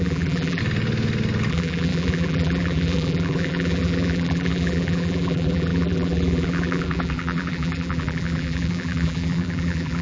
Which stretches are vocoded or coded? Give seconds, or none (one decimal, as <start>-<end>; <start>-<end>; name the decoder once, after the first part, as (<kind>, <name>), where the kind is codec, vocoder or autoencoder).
0.0-0.6 (vocoder, BigVGAN v2); 1.5-10.0